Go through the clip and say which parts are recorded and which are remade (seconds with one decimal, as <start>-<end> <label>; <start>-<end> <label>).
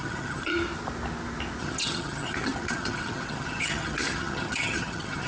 0.0-0.5 remade; 0.5-1.6 recorded; 1.6-5.3 remade